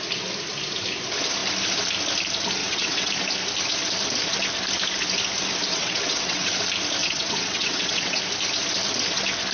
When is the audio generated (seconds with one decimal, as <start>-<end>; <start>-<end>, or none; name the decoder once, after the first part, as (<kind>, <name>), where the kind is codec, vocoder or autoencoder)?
2.6-3.1 (vocoder, WaveNeXt); 5.7-6.6; 7.0-8.2